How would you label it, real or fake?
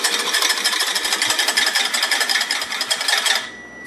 real